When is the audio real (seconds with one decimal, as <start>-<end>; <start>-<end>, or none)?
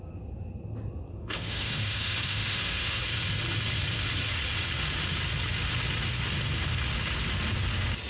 0.0-1.1; 3.0-8.1